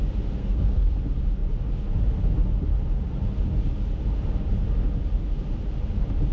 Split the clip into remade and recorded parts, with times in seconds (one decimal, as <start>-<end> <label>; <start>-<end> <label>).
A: 0.0-0.4 recorded; 0.4-1.0 remade; 1.0-6.3 recorded